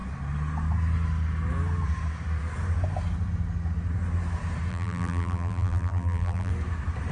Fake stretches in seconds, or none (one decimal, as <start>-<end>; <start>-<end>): 4.7-6.5